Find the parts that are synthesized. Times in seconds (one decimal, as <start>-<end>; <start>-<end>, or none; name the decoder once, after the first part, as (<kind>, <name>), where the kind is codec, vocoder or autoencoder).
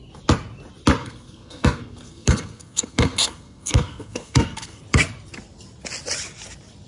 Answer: 1.0-4.8 (codec, SNAC)